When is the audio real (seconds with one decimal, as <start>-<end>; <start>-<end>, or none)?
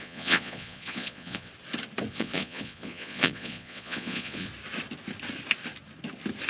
1.5-2.1; 4.5-6.5